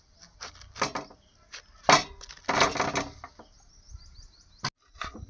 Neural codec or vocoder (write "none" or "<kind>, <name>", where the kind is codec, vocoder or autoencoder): none